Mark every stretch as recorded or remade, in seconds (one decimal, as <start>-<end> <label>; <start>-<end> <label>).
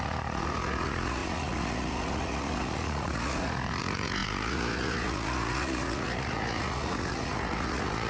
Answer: 0.0-8.1 remade